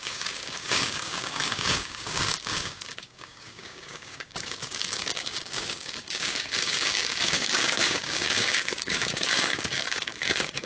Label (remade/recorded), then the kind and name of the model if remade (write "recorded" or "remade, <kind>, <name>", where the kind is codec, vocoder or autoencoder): remade, codec, DAC